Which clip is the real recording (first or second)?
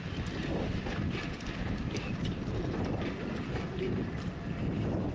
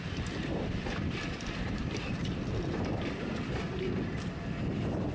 first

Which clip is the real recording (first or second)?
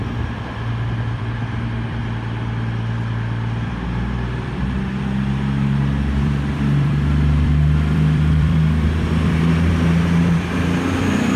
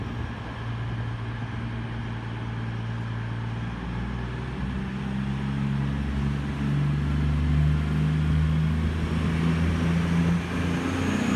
second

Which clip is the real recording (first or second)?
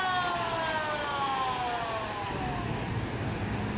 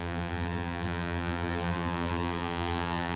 first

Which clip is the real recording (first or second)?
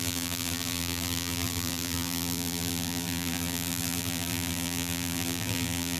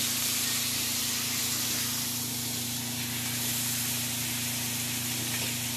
second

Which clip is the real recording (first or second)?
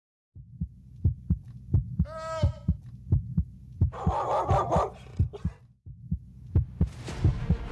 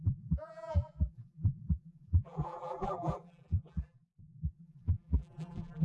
first